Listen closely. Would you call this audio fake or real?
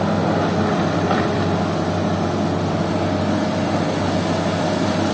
real